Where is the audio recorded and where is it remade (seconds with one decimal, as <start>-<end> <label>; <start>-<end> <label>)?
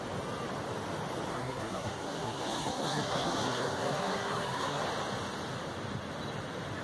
0.0-1.3 recorded; 1.3-4.8 remade; 4.8-6.8 recorded